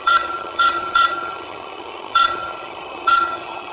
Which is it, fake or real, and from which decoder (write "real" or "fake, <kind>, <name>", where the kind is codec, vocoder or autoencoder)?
fake, vocoder, HiFi-GAN